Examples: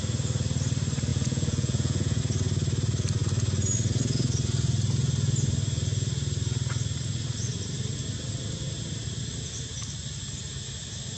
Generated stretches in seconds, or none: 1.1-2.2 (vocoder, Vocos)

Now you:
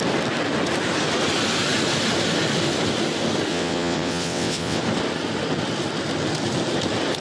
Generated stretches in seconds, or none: 3.5-4.8 (vocoder, WaveNeXt)

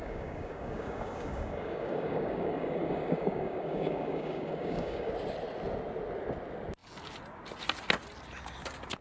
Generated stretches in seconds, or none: 0.0-5.1 (codec, DAC)

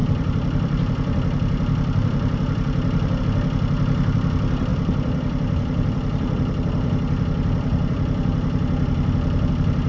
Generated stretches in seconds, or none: 0.0-3.2 (vocoder, BigVGAN v2); 4.7-9.5

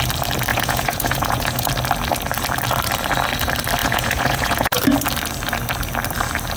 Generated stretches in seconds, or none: 0.5-1.7 (vocoder, Vocos); 3.8-4.8

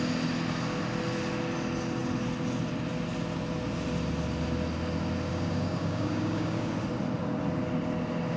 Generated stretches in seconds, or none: 5.3-6.7 (codec, DAC)

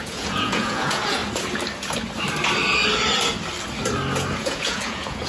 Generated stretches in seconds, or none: 0.0-1.2 (vocoder, Vocos); 4.4-5.3